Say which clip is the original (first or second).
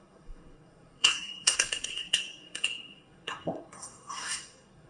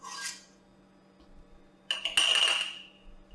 second